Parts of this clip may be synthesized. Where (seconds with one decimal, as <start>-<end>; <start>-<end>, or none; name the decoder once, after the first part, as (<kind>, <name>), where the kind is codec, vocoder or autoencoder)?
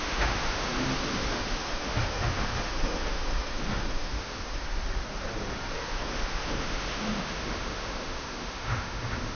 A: 0.0-4.7 (autoencoder, DAC-VAE); 5.9-9.3